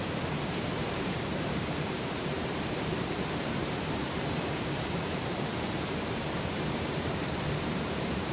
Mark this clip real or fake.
fake